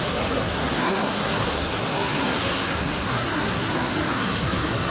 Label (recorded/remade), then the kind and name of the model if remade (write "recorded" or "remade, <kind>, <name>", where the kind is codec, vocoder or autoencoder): remade, codec, SNAC